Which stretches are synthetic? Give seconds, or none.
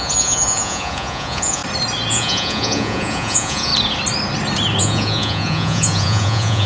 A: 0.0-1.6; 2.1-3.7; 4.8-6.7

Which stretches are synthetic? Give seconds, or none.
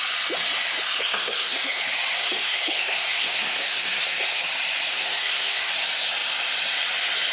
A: 1.0-1.8; 2.2-4.4; 4.9-5.7